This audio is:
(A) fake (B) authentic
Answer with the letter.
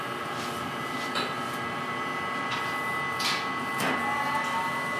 B